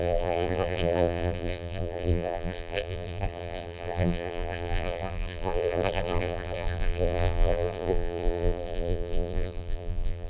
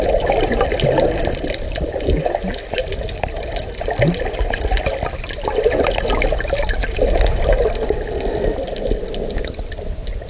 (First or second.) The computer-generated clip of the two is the first